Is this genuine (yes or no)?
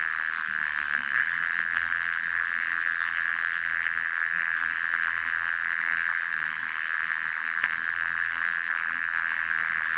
no